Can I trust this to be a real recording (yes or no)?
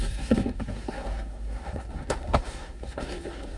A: no